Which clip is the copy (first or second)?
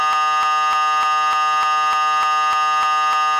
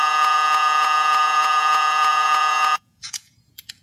second